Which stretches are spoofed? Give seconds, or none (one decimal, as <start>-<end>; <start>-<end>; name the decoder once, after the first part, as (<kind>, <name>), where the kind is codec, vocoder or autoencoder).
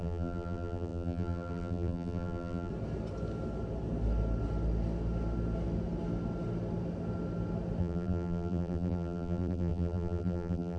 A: 0.0-2.7 (vocoder, BigVGAN v2); 7.8-10.8